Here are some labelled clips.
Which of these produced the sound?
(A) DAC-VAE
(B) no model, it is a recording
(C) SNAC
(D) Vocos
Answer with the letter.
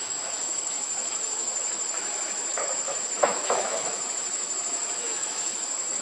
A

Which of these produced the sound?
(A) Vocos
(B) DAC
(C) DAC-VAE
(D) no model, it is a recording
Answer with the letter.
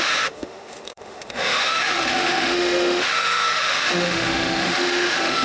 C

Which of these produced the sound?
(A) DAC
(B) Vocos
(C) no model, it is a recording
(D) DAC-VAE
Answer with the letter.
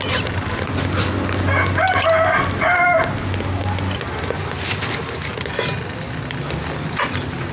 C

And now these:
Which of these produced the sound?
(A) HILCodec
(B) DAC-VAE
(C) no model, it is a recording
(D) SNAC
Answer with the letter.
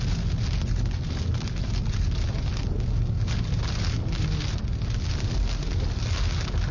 C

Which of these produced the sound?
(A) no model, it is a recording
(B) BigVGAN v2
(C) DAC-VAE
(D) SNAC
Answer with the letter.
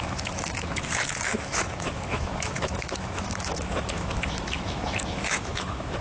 C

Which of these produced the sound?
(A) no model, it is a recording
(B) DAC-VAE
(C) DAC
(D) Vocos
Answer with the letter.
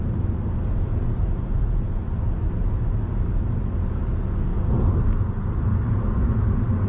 A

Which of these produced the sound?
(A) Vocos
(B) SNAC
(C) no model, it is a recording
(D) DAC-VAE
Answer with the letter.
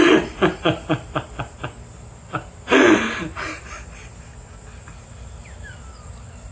C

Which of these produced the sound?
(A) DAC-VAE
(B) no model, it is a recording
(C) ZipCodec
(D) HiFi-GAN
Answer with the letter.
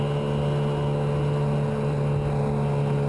B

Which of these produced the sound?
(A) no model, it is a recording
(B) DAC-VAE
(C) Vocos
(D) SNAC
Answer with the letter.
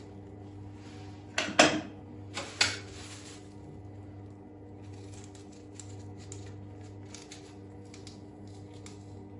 A